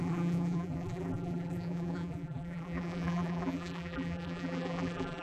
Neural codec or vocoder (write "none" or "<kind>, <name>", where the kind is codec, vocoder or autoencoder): vocoder, BigVGAN v2